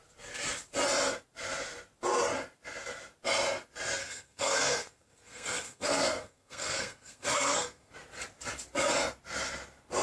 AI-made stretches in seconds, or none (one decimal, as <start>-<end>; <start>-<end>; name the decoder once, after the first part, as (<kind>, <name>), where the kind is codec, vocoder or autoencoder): 4.0-7.9 (codec, SNAC)